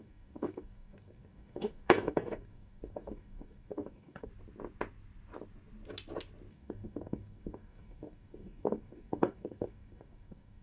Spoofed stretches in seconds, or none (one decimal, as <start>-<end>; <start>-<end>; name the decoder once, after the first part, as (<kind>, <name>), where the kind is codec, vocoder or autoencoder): 0.0-4.3 (codec, DAC); 6.5-10.6

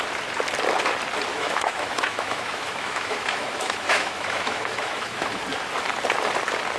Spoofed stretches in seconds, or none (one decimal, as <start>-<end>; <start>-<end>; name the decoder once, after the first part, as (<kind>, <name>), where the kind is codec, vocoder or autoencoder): 1.3-5.4 (autoencoder, DAC-VAE)